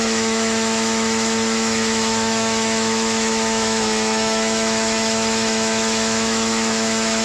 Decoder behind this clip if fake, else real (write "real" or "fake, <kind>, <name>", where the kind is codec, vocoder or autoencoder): fake, autoencoder, DAC-VAE